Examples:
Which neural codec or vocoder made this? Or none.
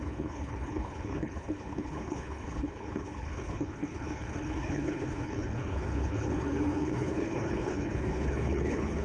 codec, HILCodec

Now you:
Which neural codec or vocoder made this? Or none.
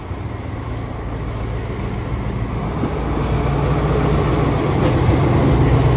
none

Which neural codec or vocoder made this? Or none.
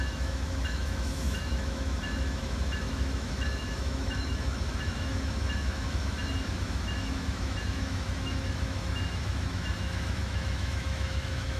autoencoder, DAC-VAE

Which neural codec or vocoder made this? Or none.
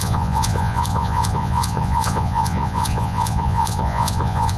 vocoder, Vocos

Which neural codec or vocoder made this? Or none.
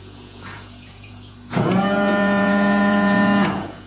vocoder, Vocos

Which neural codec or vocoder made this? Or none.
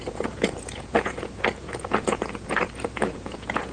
vocoder, Vocos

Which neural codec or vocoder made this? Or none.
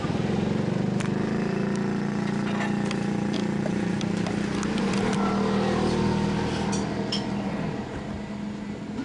none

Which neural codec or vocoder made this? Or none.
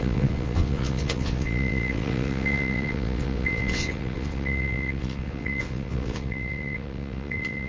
vocoder, WaveNeXt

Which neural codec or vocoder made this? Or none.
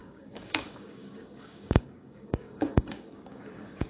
codec, DAC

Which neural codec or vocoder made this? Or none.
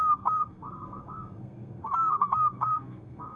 codec, SNAC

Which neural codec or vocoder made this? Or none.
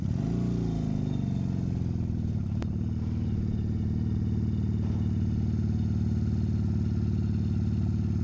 none